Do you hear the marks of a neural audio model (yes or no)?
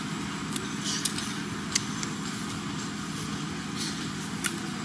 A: no